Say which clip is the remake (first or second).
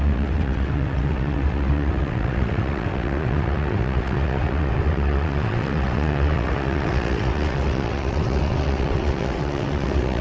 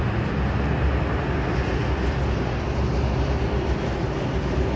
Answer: first